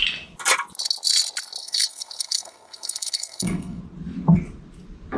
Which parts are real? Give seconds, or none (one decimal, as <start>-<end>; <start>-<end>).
0.0-1.6; 3.8-5.2